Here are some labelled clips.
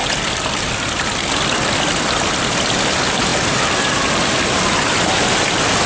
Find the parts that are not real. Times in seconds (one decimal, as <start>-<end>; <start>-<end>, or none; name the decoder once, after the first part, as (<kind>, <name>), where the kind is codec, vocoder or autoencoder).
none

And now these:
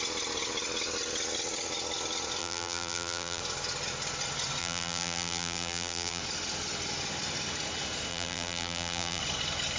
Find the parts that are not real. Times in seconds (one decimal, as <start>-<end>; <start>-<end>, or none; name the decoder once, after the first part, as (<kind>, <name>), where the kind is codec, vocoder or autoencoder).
2.4-3.4 (vocoder, BigVGAN v2); 4.6-6.2; 8.1-9.2

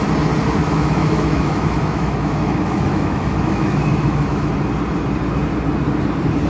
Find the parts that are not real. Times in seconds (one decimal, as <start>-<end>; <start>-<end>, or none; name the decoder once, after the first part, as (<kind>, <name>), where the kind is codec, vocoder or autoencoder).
0.6-4.5 (autoencoder, DAC-VAE)